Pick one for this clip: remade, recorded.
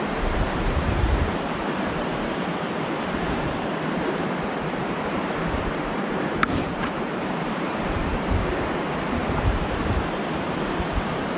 remade